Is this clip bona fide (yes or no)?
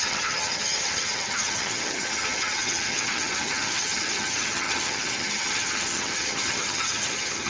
no